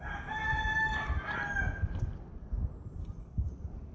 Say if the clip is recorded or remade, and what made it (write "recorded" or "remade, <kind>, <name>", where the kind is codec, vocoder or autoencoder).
recorded